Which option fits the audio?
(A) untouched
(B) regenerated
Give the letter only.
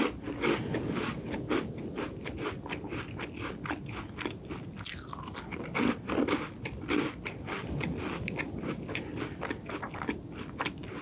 A